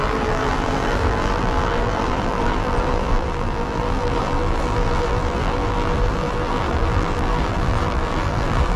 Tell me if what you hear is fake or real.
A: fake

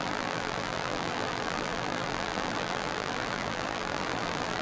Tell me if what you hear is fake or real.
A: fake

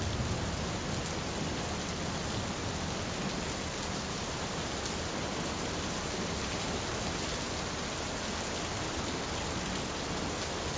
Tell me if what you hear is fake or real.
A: real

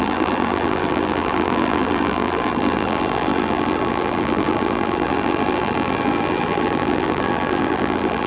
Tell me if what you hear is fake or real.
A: fake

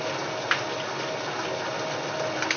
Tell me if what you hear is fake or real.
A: real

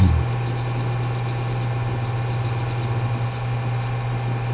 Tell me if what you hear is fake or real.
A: real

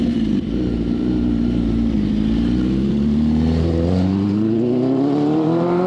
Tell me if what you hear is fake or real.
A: fake